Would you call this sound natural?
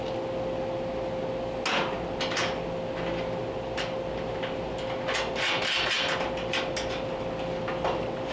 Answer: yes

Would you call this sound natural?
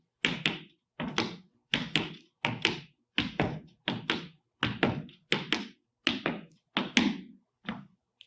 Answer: yes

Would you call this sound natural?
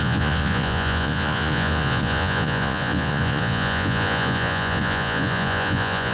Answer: no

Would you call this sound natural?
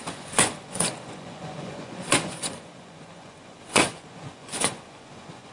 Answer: no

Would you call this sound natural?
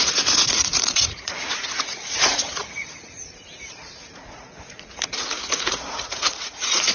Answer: no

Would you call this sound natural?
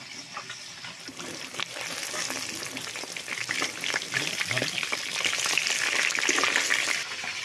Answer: yes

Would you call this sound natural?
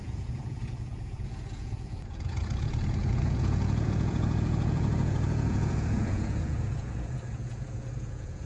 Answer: no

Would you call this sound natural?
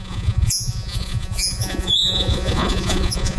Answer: no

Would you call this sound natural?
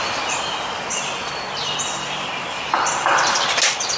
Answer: yes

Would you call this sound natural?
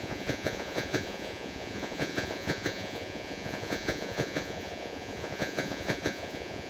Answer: no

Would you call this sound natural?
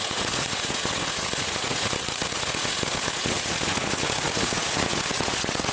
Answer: no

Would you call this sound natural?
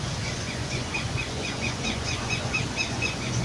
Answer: no